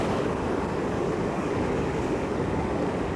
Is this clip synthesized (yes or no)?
yes